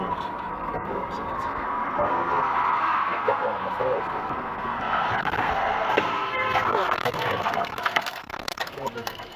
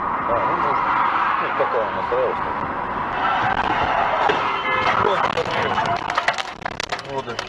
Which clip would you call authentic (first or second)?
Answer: second